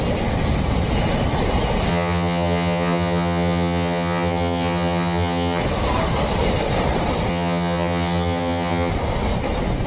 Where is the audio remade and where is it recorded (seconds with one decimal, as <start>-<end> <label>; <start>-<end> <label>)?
0.0-1.9 recorded; 1.9-5.6 remade; 5.6-7.3 recorded; 7.3-8.9 remade; 8.9-9.9 recorded